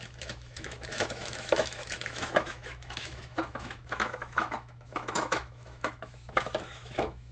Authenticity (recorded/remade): remade